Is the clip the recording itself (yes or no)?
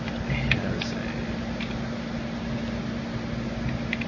yes